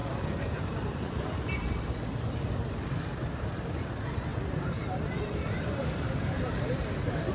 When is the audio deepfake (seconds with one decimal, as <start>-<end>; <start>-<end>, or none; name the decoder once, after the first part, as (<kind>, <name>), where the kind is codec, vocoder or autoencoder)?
0.0-2.5 (vocoder, BigVGAN v2); 4.3-7.3